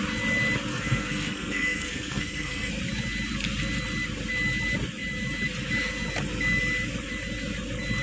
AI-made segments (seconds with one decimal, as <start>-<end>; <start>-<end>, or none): 0.7-2.7